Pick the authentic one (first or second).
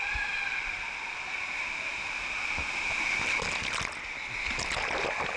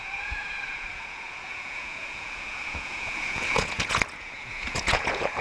first